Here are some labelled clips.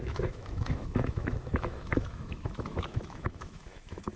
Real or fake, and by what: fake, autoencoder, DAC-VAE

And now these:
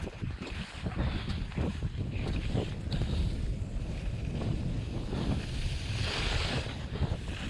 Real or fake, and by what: real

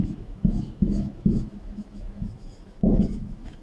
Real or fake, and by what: fake, autoencoder, DAC-VAE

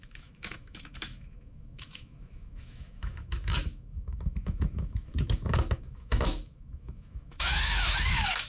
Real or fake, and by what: fake, autoencoder, DAC-VAE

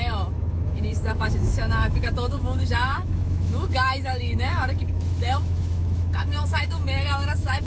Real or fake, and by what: fake, autoencoder, DAC-VAE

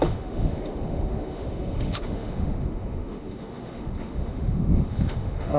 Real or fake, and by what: fake, autoencoder, DAC-VAE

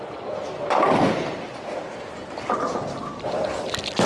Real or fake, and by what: real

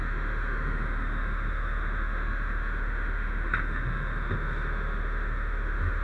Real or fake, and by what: fake, autoencoder, DAC-VAE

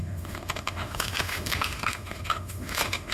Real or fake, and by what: fake, autoencoder, DAC-VAE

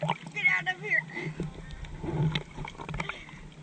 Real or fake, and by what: real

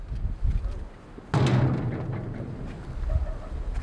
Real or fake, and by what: real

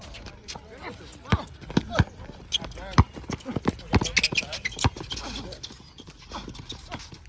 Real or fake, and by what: real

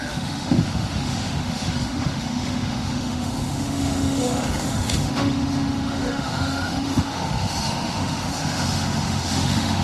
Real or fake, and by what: fake, autoencoder, DAC-VAE